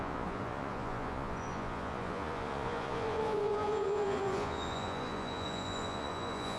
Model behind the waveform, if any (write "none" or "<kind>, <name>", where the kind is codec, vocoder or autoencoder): vocoder, Vocos